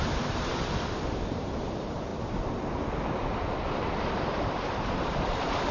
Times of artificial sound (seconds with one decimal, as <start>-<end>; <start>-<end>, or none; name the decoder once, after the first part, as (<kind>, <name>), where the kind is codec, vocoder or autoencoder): 0.0-0.5 (vocoder, BigVGAN v2); 1.3-2.1; 4.0-5.7